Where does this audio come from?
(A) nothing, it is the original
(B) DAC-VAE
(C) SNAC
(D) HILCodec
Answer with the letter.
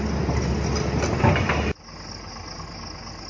A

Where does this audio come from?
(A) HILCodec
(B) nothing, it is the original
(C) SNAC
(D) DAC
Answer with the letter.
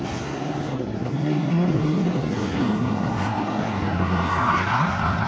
C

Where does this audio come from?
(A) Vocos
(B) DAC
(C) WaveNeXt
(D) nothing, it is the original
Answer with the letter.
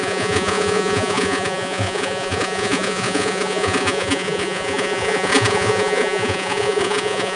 A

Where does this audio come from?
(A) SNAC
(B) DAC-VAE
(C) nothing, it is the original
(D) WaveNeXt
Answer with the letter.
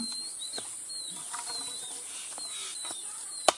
C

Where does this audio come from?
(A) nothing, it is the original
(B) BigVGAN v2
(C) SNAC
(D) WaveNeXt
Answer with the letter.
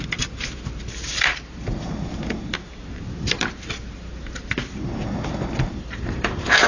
A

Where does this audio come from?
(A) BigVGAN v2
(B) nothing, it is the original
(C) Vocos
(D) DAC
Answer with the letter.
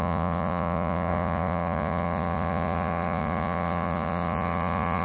C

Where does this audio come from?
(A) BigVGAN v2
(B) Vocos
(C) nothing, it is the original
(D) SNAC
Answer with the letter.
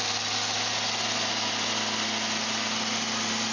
C